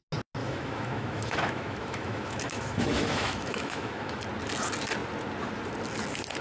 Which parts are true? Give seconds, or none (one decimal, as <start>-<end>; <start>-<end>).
0.0-0.4; 4.2-6.4